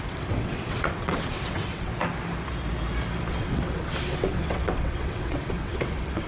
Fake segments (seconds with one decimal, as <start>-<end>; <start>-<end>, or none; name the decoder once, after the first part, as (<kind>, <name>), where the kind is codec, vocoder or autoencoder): 0.0-1.9 (vocoder, WaveNeXt); 3.3-6.3